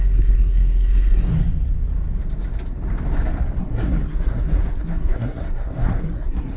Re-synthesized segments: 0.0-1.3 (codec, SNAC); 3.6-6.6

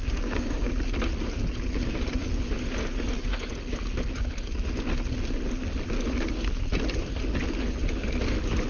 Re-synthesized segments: 0.0-0.7 (codec, DAC)